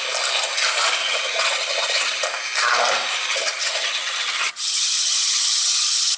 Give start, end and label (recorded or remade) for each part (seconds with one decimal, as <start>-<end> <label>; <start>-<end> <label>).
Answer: 0.0-1.0 recorded; 1.0-2.2 remade; 2.2-3.3 recorded; 3.3-6.2 remade